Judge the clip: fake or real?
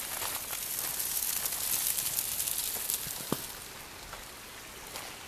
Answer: real